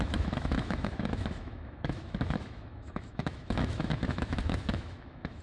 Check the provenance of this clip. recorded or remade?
remade